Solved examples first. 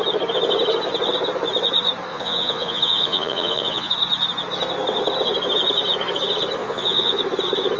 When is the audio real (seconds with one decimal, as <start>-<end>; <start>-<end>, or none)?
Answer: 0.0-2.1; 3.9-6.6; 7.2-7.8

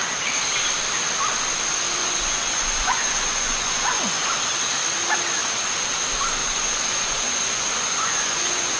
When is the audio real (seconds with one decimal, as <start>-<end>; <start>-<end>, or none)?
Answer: 0.0-2.0; 4.3-6.4

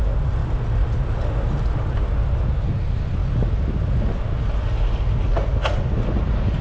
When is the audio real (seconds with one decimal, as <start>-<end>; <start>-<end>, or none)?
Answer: 0.0-6.6

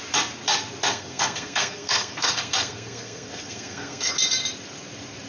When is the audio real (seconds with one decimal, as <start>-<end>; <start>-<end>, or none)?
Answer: 0.0-0.9; 4.1-5.3